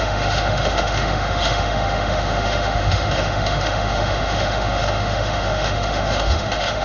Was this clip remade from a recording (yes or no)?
yes